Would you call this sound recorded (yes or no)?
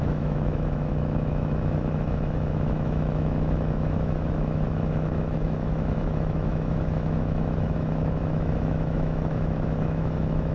no